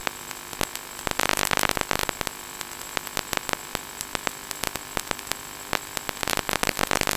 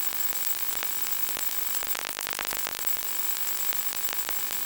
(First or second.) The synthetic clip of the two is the second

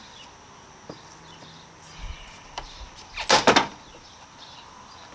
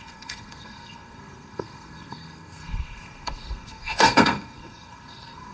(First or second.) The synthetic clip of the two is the second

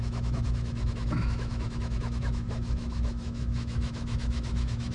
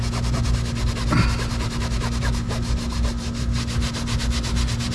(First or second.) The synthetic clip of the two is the first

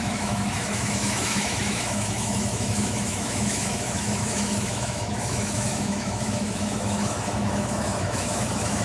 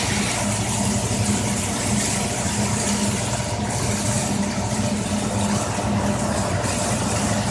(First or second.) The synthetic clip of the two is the first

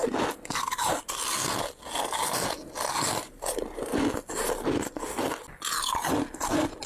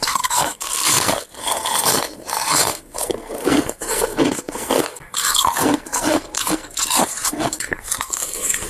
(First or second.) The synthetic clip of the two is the second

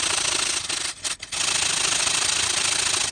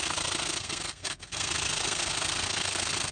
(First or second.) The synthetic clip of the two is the second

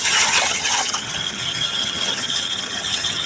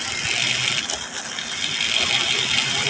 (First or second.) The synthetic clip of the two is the first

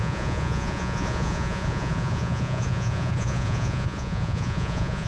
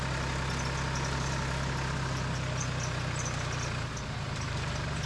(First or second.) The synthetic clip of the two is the first